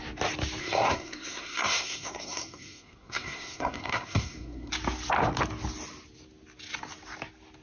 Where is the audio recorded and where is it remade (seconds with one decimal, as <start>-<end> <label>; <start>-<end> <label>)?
0.0-0.6 recorded; 0.6-4.7 remade; 4.7-7.6 recorded